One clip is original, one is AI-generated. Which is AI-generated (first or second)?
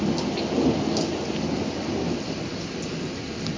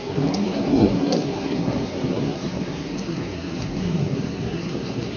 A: second